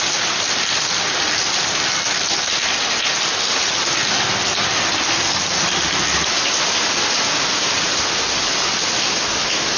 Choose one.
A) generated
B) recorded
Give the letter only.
B